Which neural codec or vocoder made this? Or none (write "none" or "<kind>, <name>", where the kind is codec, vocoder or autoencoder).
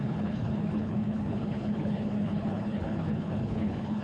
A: codec, HILCodec